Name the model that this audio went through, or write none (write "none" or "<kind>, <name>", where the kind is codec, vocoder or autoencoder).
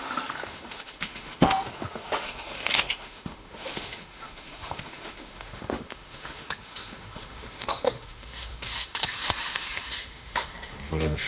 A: autoencoder, DAC-VAE